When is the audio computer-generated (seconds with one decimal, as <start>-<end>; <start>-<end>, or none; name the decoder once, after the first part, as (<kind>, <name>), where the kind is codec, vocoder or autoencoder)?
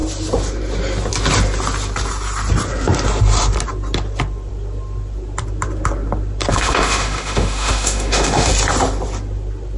6.5-8.5 (autoencoder, DAC-VAE)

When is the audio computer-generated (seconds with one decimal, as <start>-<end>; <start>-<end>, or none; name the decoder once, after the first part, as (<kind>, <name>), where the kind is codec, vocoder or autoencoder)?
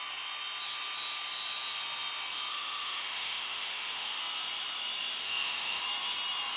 2.5-4.2 (autoencoder, DAC-VAE); 5.2-5.8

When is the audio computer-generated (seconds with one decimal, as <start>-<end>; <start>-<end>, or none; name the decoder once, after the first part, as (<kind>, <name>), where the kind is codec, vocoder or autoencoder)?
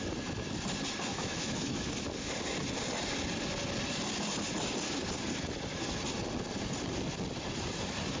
1.1-1.9 (autoencoder, DAC-VAE)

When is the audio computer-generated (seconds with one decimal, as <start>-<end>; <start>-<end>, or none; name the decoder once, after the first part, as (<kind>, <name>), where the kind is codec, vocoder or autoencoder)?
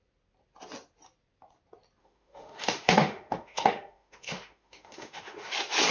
2.0-5.5 (autoencoder, DAC-VAE)